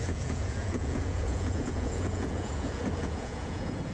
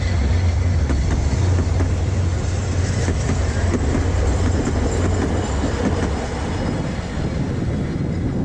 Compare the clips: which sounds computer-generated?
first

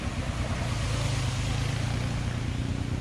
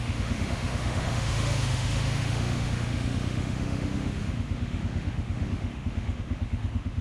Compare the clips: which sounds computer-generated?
second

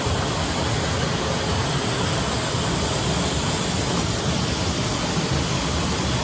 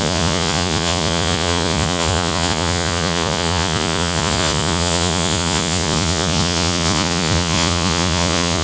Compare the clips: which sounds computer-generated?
second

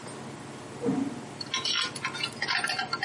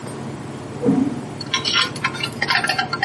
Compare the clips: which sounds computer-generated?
second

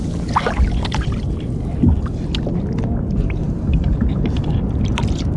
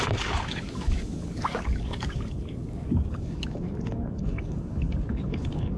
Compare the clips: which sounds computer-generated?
second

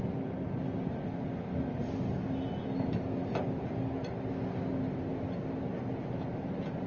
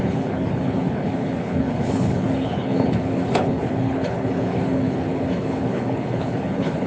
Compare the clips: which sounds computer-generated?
second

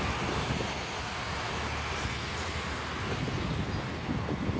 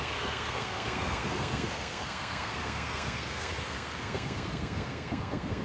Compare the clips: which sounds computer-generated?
second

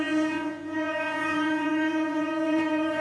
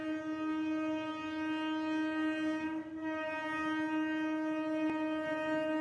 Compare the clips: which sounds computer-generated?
first